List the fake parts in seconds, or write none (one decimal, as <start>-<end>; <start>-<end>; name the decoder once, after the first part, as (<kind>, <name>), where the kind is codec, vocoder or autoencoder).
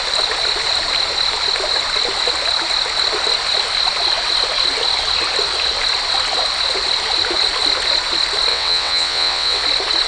8.5-9.6 (vocoder, WaveNeXt)